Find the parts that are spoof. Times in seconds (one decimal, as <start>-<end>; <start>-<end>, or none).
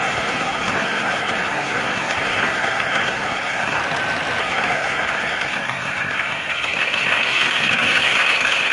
0.0-3.8; 4.4-8.7